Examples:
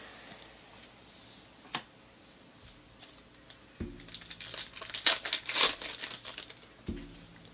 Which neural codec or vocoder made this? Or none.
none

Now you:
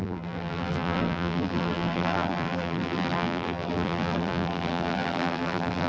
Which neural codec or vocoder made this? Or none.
vocoder, BigVGAN v2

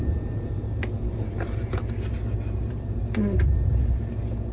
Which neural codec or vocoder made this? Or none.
vocoder, BigVGAN v2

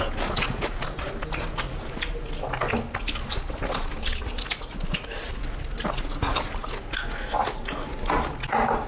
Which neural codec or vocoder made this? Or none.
none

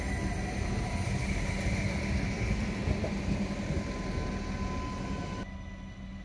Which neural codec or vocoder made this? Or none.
none